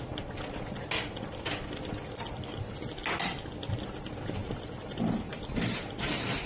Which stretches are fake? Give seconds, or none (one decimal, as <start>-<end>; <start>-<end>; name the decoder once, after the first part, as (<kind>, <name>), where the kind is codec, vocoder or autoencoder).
4.4-5.8 (vocoder, BigVGAN v2)